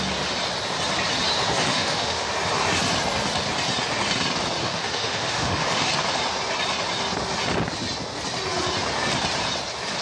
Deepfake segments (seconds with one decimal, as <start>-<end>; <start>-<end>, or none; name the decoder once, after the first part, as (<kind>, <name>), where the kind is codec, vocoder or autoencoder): 1.7-2.3 (autoencoder, DAC-VAE); 4.6-5.9